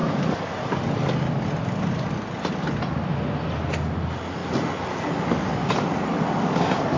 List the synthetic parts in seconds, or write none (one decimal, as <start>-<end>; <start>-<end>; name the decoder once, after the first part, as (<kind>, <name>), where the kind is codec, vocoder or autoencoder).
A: 0.0-0.9 (vocoder, BigVGAN v2)